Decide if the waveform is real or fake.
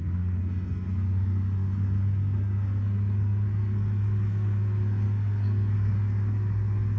fake